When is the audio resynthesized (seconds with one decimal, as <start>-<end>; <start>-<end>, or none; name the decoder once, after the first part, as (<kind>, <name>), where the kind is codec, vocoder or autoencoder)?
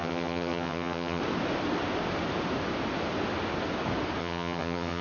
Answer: 0.0-1.2 (vocoder, HiFi-GAN); 4.2-5.0